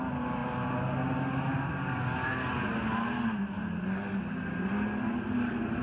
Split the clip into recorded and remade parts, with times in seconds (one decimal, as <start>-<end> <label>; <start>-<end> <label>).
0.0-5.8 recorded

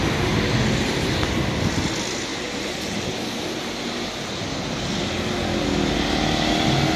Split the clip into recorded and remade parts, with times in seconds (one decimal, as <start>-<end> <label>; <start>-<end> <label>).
0.0-2.3 recorded; 2.3-2.8 remade; 2.8-7.0 recorded

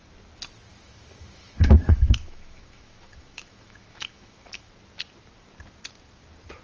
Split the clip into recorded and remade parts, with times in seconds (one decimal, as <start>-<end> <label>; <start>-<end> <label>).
0.0-0.7 recorded; 0.7-4.7 remade; 4.7-6.6 recorded

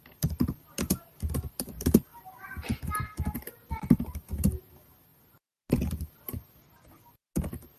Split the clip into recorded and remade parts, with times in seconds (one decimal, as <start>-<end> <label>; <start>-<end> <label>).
0.0-7.8 recorded